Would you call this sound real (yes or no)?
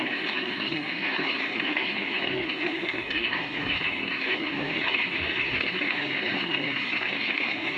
no